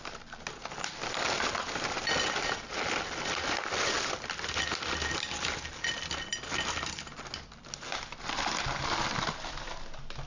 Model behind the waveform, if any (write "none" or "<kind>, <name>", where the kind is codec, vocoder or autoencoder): none